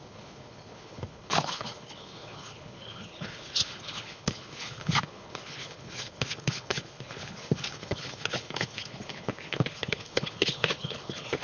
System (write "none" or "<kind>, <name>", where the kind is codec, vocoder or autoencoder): codec, HILCodec